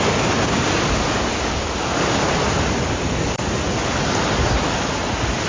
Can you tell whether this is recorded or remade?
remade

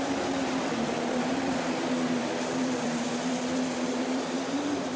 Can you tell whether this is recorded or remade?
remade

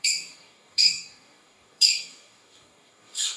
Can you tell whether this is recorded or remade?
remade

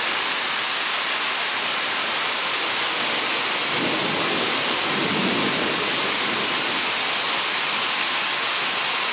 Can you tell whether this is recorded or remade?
recorded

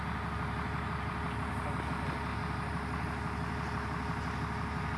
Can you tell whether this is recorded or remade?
recorded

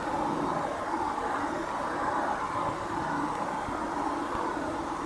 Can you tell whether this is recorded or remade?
recorded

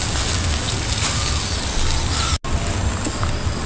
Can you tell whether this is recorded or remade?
recorded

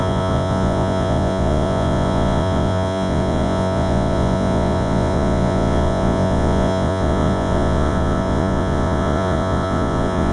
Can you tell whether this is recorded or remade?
remade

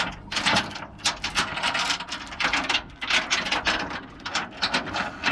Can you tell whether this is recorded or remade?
recorded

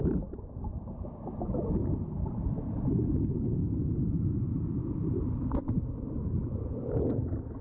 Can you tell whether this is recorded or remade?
remade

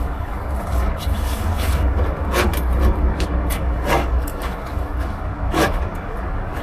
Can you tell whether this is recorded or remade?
remade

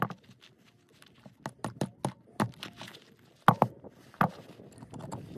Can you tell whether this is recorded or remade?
recorded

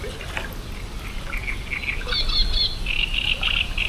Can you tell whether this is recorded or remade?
recorded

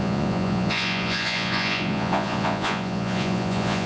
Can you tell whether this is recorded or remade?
remade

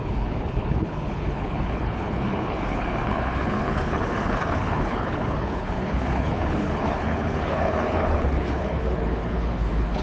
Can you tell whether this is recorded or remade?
remade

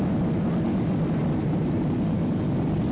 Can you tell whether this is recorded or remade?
recorded